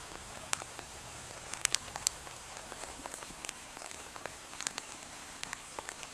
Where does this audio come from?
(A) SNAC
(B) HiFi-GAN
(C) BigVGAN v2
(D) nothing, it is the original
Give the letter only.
A